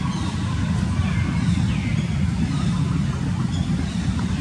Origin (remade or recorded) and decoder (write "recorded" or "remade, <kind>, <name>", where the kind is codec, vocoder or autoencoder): recorded